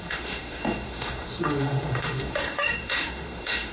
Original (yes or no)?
no